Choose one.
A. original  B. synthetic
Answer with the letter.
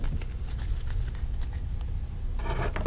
A